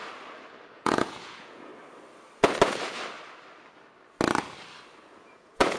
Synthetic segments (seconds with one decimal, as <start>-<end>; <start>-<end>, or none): 0.7-1.7; 5.2-5.8